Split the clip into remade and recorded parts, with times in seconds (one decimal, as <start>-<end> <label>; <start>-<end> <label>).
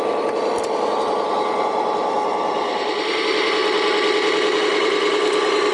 0.0-3.6 remade; 3.6-4.6 recorded; 4.6-5.7 remade